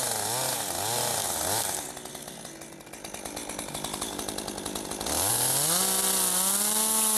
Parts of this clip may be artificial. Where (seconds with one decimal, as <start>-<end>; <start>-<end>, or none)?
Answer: none